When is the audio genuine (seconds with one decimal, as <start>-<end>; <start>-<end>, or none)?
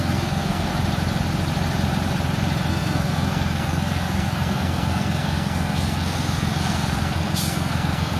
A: 0.7-2.7